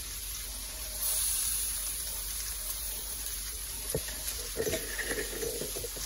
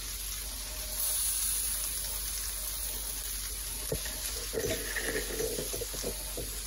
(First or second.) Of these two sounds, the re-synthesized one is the first